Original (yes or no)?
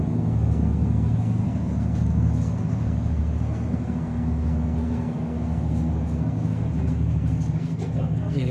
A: no